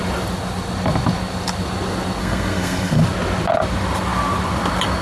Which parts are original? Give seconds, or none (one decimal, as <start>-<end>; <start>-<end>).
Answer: 0.0-2.2; 3.0-5.0